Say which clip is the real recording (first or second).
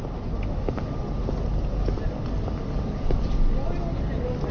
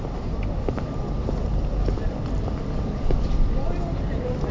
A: first